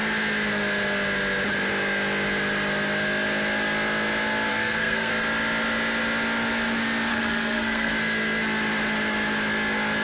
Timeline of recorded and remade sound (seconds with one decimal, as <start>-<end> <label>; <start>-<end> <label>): 0.0-4.5 recorded; 4.5-5.1 remade; 5.1-7.1 recorded; 7.1-7.9 remade; 7.9-10.0 recorded